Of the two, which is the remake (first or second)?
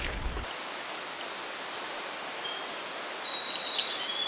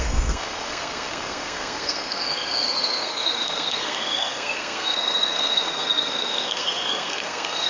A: second